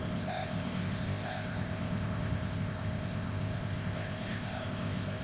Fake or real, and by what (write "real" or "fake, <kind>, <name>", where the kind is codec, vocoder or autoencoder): fake, codec, ZipCodec